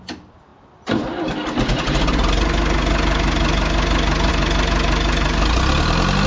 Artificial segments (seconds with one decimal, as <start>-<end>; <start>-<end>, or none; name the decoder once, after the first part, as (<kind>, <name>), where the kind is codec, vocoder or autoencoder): none